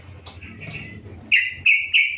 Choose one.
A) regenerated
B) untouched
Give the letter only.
B